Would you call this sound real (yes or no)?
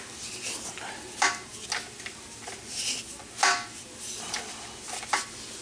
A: yes